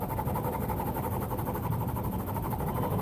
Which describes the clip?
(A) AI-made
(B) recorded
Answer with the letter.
B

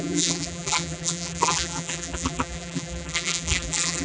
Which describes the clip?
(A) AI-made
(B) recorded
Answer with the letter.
A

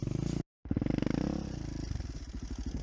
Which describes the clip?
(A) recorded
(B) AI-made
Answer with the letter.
A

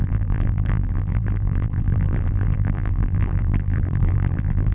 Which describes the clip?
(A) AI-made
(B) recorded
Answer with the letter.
A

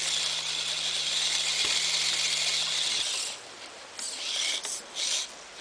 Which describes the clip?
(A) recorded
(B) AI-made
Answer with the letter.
A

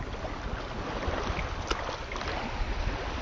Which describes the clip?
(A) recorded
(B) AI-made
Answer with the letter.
A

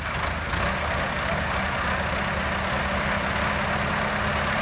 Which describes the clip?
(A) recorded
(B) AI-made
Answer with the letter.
A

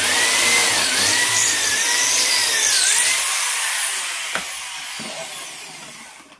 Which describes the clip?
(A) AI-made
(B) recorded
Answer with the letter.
A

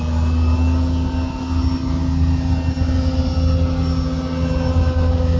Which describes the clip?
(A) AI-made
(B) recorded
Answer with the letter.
B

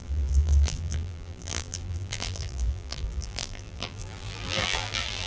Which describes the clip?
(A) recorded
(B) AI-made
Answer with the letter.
B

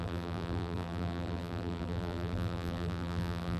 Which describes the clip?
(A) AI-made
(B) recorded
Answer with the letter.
A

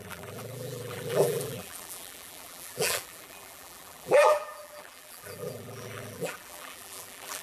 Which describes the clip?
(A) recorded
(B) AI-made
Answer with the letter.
B